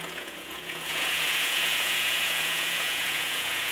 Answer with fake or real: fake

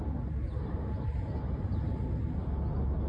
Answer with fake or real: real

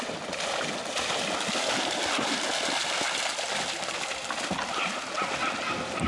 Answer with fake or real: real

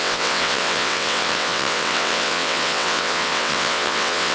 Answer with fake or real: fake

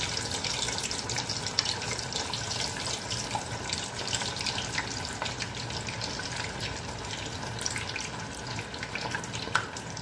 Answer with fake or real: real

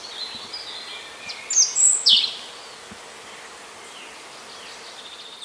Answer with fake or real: real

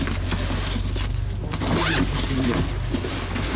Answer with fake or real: real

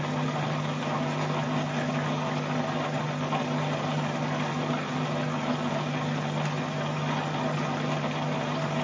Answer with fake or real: real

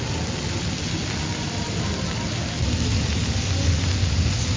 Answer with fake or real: real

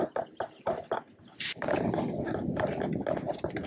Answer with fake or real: real